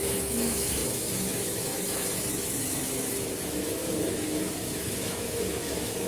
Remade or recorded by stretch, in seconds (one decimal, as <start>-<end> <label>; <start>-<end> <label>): 0.0-6.1 remade